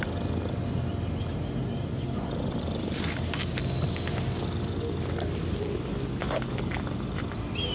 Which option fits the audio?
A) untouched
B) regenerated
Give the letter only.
A